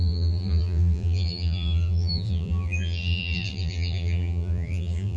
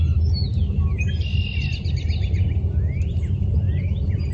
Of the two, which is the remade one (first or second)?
first